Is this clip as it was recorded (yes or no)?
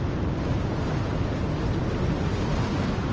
yes